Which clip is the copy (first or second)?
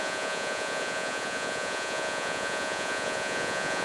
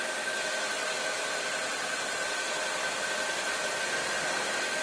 first